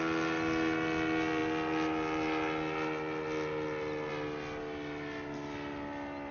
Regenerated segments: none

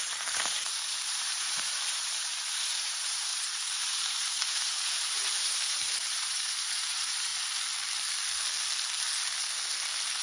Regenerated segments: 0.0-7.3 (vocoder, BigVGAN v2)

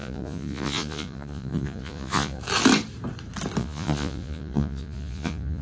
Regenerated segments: 0.0-2.4 (vocoder, Vocos); 3.6-5.6